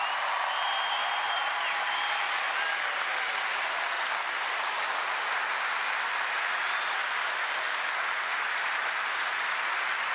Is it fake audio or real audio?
real